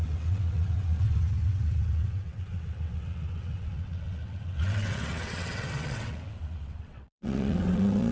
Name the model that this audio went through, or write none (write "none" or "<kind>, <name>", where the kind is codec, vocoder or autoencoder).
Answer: vocoder, WaveNeXt